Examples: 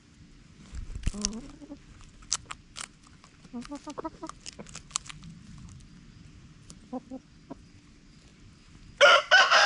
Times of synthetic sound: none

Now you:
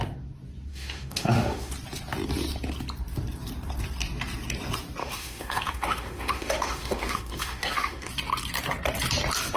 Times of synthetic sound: 0.7-1.7 (autoencoder, DAC-VAE); 5.0-8.1

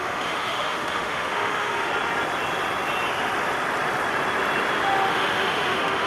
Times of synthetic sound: 0.0-1.9 (autoencoder, DAC-VAE); 5.1-6.1

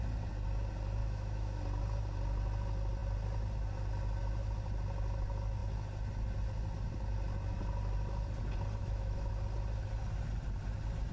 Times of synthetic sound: 1.0-1.6 (autoencoder, DAC-VAE); 8.8-9.3

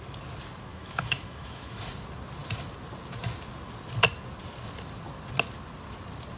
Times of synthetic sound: 0.7-1.8 (autoencoder, DAC-VAE)

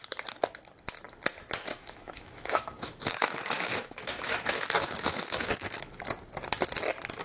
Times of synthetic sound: 1.7-6.0 (autoencoder, DAC-VAE)

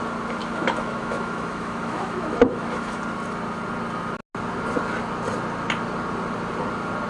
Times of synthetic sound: 0.4-3.0 (autoencoder, DAC-VAE)

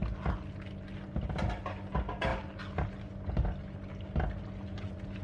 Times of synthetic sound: none